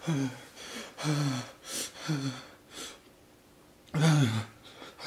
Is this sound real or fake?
real